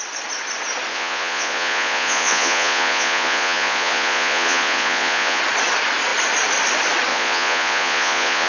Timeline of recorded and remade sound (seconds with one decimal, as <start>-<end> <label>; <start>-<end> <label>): 0.0-0.9 recorded; 0.9-5.4 remade; 5.4-7.1 recorded; 7.1-8.5 remade